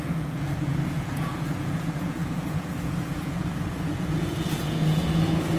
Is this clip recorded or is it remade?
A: remade